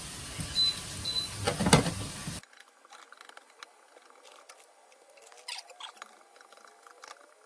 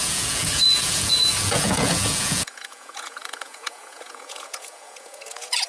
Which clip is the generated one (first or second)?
second